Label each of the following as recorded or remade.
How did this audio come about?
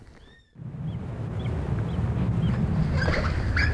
recorded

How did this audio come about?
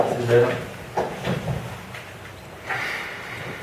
recorded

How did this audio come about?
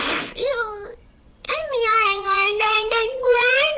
remade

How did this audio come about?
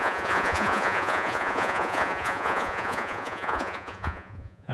remade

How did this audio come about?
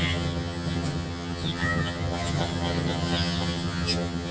remade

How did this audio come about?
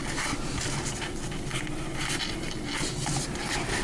recorded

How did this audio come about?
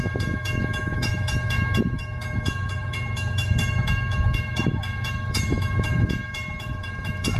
remade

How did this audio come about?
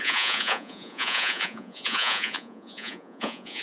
remade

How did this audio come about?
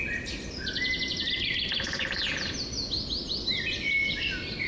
recorded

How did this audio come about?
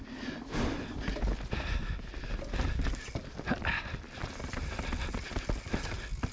recorded